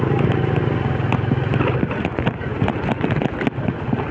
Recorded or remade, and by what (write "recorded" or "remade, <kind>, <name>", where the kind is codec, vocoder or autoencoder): recorded